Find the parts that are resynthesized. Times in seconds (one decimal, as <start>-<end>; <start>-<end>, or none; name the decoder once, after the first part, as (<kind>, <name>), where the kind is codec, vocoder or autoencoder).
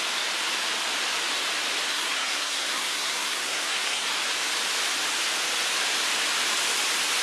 1.9-4.1 (codec, SNAC)